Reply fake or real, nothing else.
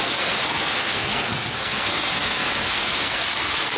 fake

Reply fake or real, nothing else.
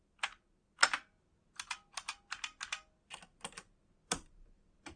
real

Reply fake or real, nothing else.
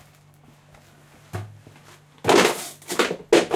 real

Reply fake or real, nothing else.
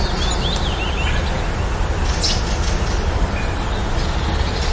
real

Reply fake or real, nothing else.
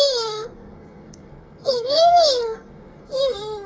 fake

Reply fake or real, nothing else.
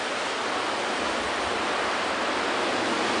real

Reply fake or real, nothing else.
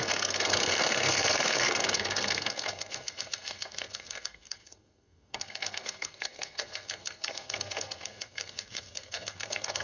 fake